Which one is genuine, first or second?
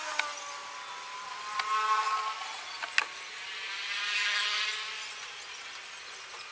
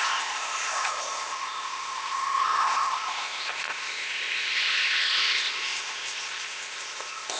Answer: first